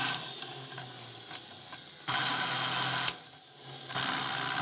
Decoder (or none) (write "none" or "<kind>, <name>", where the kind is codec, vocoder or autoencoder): none